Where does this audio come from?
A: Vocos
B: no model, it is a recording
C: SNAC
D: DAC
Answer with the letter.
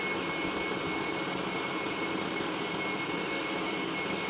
B